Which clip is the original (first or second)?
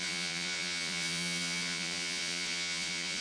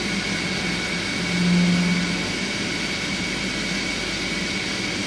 second